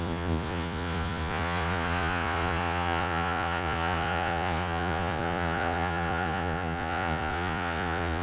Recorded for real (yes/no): no